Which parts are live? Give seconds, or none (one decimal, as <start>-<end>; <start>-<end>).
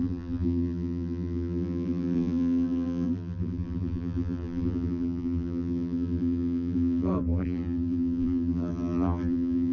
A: none